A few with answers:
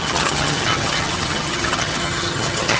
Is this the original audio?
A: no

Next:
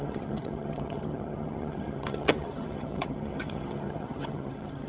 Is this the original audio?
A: no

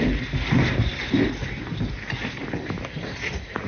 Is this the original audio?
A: yes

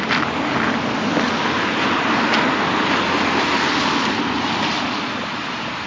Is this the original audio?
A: yes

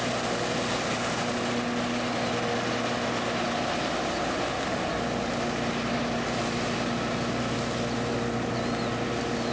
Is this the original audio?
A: yes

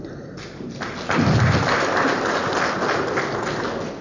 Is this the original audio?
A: yes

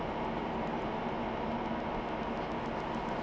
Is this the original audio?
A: yes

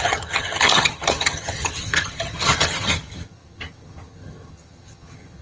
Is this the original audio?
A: no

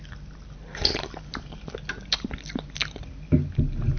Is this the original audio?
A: yes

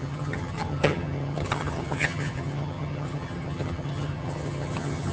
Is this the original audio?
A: no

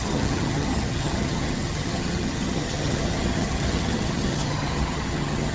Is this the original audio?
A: no